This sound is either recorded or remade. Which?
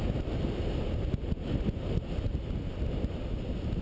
recorded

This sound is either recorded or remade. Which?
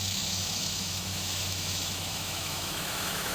remade